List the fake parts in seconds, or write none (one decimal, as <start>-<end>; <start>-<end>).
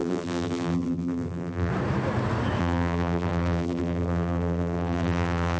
0.0-1.7; 2.6-5.6